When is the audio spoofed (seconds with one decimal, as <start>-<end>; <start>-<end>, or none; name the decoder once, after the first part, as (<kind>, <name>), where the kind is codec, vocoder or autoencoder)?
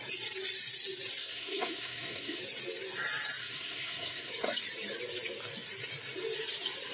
1.2-2.4 (codec, SNAC); 3.4-4.3